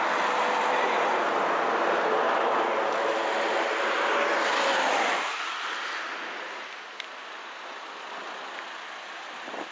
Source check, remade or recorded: recorded